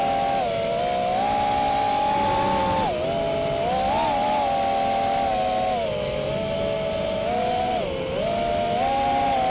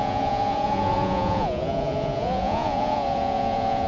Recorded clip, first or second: first